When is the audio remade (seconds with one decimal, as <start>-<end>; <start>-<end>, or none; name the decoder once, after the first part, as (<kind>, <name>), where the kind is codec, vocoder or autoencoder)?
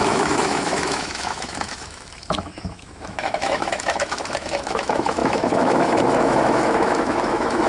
0.0-7.7 (autoencoder, DAC-VAE)